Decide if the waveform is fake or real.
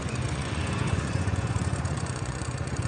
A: fake